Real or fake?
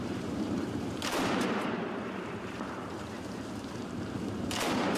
fake